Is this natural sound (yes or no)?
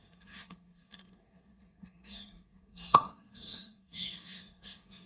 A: no